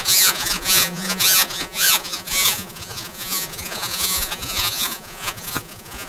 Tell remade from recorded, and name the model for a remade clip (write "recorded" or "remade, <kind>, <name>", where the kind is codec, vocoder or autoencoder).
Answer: remade, vocoder, Vocos